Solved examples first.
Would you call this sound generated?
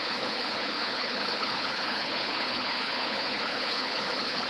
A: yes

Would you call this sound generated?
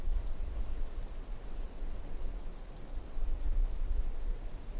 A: no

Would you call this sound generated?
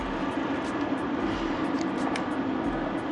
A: no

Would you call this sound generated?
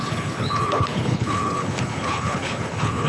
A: yes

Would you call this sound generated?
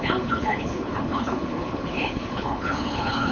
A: yes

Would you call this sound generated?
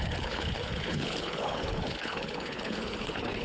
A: yes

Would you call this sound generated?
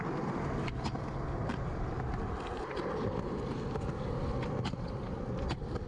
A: no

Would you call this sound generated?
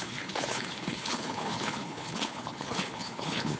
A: yes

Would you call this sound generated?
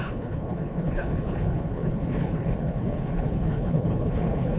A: yes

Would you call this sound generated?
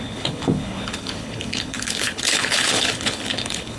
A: yes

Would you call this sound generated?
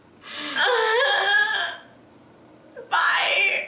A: no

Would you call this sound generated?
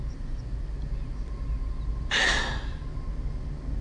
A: no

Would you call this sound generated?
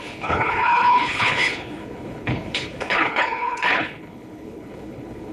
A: yes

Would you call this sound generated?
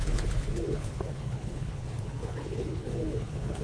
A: yes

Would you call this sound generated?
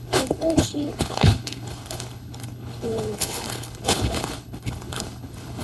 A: yes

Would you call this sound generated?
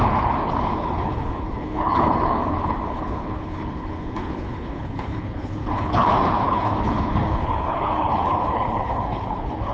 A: yes